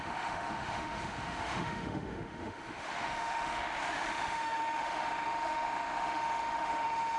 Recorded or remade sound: remade